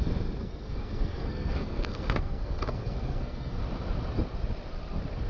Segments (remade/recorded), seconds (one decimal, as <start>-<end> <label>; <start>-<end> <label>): 0.0-0.4 recorded; 0.4-3.6 remade; 3.6-5.3 recorded